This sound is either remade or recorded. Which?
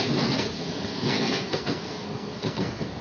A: remade